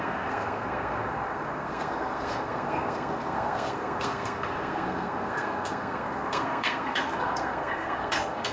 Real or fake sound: fake